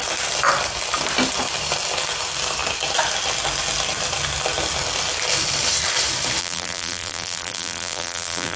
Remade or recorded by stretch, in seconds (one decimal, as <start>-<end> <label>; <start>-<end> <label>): 0.0-6.4 recorded; 6.4-8.6 remade